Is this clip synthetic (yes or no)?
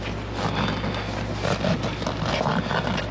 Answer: no